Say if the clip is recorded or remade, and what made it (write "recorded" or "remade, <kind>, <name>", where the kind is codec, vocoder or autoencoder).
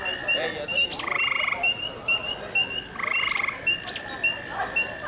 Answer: recorded